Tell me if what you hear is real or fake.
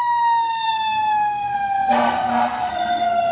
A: fake